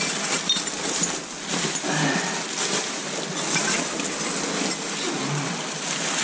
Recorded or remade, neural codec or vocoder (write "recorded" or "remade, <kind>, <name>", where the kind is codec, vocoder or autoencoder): recorded